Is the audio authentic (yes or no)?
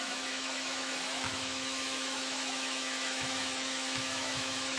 no